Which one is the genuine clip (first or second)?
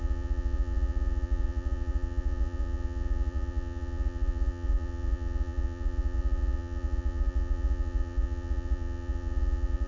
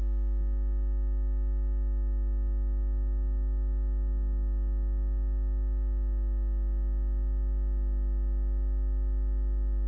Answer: second